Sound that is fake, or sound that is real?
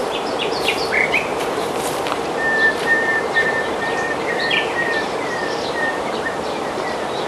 fake